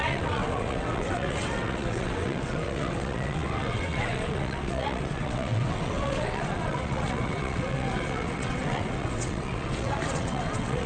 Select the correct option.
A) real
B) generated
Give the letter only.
B